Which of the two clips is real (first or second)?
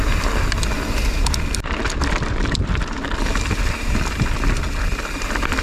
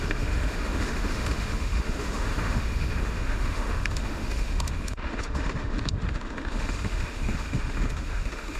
first